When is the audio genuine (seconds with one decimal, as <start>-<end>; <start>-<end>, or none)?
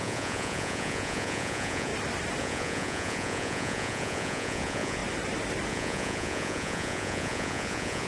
1.9-2.4; 5.0-5.7